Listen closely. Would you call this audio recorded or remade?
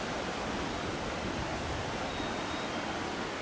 recorded